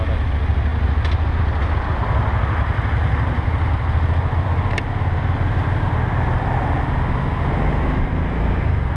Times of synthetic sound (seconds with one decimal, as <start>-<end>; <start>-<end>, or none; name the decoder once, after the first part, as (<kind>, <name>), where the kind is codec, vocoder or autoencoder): none